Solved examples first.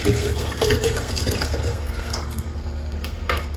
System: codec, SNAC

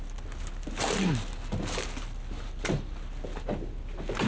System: none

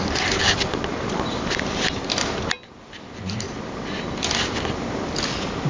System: none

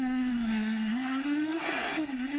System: codec, SNAC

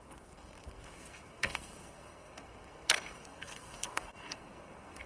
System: codec, SNAC